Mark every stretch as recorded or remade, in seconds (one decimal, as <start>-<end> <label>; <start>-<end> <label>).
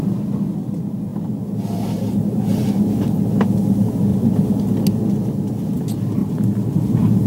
0.0-4.1 recorded; 4.1-4.6 remade; 4.6-6.2 recorded; 6.2-7.3 remade